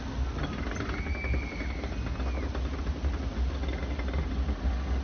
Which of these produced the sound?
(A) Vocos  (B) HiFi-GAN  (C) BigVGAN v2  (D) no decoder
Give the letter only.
D